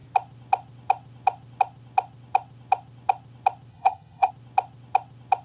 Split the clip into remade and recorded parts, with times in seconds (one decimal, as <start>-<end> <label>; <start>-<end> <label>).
0.0-3.7 recorded; 3.7-4.3 remade; 4.3-5.4 recorded